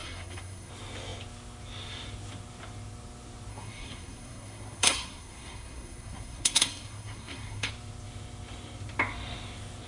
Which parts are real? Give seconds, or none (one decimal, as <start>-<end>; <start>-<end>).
0.7-3.5; 7.7-9.9